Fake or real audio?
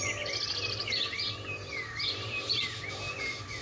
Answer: real